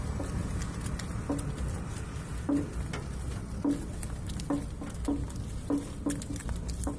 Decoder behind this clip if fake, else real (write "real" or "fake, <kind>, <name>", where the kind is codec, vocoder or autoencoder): real